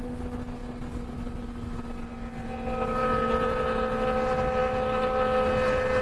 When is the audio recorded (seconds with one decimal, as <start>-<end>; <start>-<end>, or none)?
0.0-6.0